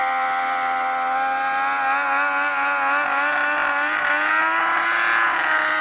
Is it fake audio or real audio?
real